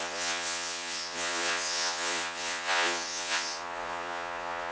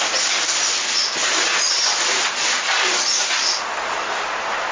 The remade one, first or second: first